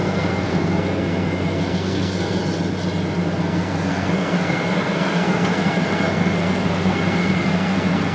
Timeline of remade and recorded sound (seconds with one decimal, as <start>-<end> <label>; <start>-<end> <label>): 0.0-2.4 remade; 2.4-3.4 recorded; 3.4-8.1 remade

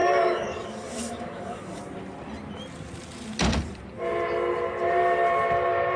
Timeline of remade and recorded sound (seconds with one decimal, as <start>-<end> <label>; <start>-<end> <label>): 0.0-1.8 remade; 1.8-6.0 recorded

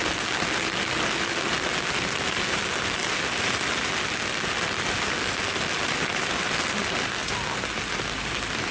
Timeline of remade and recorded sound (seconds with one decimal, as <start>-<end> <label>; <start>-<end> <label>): 0.0-8.7 recorded

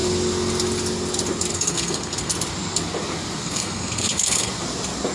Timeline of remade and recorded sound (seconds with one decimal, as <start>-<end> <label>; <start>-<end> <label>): 0.0-1.5 recorded; 1.5-2.3 remade; 2.3-3.4 recorded; 3.4-4.5 remade; 4.5-5.1 recorded

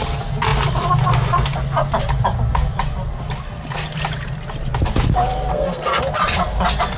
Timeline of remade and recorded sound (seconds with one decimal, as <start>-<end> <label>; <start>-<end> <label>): 0.0-5.5 recorded; 5.5-6.0 remade; 6.0-7.0 recorded

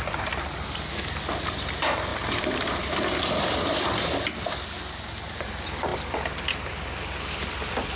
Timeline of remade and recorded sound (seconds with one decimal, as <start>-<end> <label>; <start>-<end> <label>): 0.0-8.0 recorded